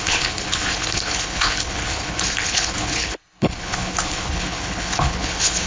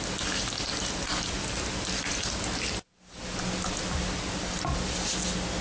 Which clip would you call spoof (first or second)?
first